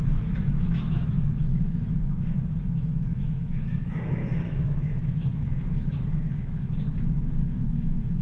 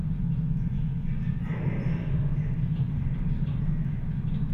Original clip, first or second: second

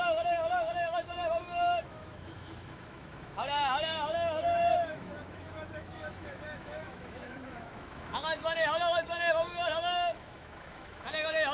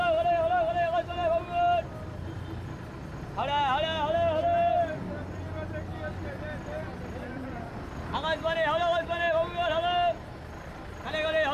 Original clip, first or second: second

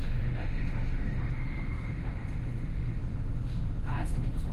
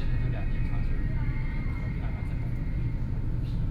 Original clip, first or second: second